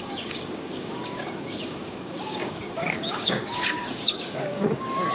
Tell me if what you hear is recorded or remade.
remade